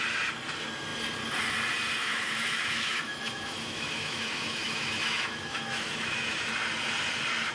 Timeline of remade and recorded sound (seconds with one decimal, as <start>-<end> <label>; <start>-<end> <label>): 0.0-2.0 recorded; 2.0-6.5 remade; 6.5-7.5 recorded